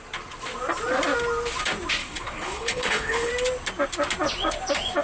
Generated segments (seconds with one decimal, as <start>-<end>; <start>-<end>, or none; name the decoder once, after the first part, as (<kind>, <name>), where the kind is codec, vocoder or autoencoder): 2.0-3.3 (codec, HILCodec)